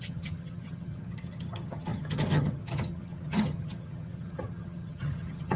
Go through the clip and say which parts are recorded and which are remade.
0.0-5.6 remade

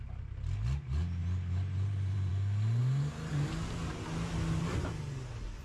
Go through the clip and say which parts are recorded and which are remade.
0.0-1.2 recorded; 1.2-2.3 remade; 2.3-5.6 recorded

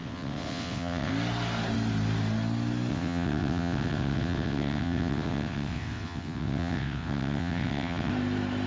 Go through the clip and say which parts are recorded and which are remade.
0.0-1.1 remade; 1.1-2.9 recorded; 2.9-8.1 remade; 8.1-8.7 recorded

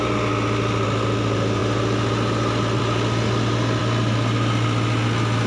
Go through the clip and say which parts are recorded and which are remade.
0.0-5.5 recorded

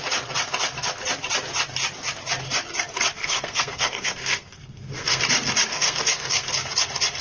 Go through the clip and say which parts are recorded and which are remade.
0.0-3.2 recorded; 3.2-5.2 remade; 5.2-5.7 recorded; 5.7-6.5 remade; 6.5-7.2 recorded

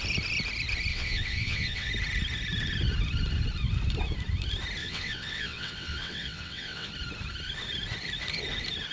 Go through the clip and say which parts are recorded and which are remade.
0.0-0.9 recorded; 0.9-1.9 remade; 1.9-4.8 recorded; 4.8-6.9 remade; 6.9-8.9 recorded

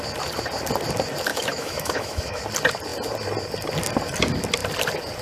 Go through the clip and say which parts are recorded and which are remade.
0.0-1.3 recorded; 1.3-2.4 remade; 2.4-5.2 recorded